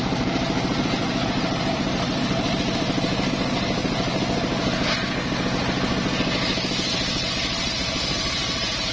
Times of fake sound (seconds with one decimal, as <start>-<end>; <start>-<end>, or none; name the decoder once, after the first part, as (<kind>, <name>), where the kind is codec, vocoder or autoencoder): 0.0-4.1 (vocoder, BigVGAN v2); 7.3-8.9